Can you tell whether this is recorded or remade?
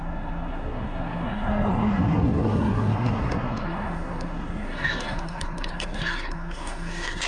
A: remade